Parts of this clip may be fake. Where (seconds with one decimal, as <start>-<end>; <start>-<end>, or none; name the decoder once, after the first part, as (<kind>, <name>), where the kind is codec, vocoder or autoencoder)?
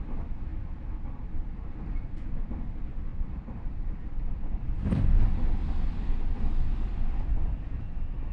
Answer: 0.5-2.5 (vocoder, BigVGAN v2); 3.1-4.6